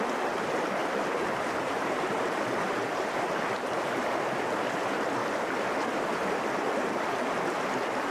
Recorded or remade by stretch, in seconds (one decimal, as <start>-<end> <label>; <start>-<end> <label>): 0.0-0.8 recorded; 0.8-4.2 remade; 4.2-8.1 recorded